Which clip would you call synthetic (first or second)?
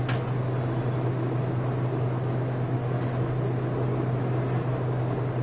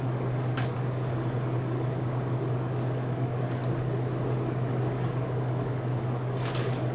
second